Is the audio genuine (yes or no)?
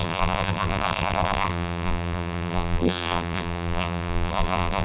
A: no